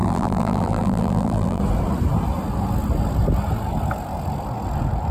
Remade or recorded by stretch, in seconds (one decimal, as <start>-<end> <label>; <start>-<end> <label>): 0.0-1.6 remade; 1.6-5.1 recorded